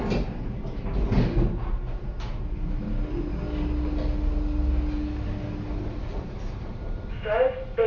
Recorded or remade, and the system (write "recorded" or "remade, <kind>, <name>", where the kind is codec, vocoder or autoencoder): recorded